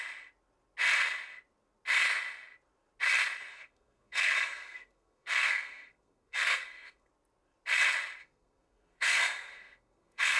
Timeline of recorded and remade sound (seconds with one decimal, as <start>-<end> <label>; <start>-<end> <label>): 0.0-3.5 recorded; 3.5-7.1 remade; 7.1-8.2 recorded; 8.2-10.4 remade